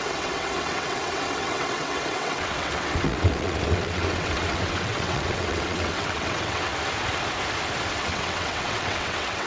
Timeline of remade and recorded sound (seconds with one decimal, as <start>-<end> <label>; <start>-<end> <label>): 0.0-6.7 remade; 6.7-7.9 recorded; 7.9-9.5 remade